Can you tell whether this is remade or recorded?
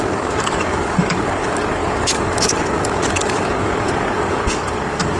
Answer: remade